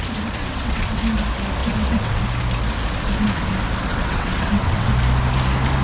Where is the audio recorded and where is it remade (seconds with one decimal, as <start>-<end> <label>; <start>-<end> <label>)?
0.0-0.4 recorded; 0.4-1.0 remade; 1.0-1.6 recorded; 1.6-2.2 remade; 2.2-3.9 recorded; 3.9-4.9 remade; 4.9-5.8 recorded

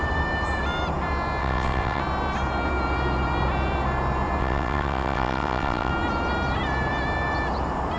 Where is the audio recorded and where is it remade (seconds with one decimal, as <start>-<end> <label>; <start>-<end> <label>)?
0.0-1.4 recorded; 1.4-2.0 remade; 2.0-4.4 recorded; 4.4-5.9 remade; 5.9-8.0 recorded

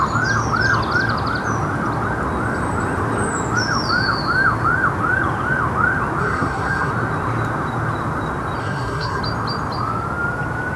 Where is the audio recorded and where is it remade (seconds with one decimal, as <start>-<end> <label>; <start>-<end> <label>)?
0.0-6.2 recorded; 6.2-6.9 remade; 6.9-8.6 recorded; 8.6-9.2 remade; 9.2-10.8 recorded

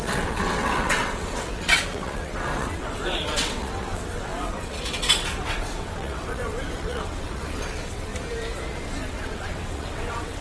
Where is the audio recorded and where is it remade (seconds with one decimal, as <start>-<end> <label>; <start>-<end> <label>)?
0.0-8.1 remade; 8.1-9.0 recorded; 9.0-10.4 remade

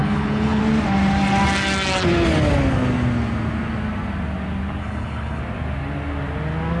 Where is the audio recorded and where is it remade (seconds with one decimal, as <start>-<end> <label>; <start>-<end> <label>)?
0.0-0.6 remade; 0.6-4.8 recorded; 4.8-5.4 remade; 5.4-6.8 recorded

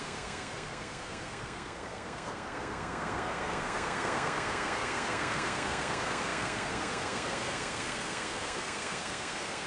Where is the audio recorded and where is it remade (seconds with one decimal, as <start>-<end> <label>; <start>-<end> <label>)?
0.0-9.7 remade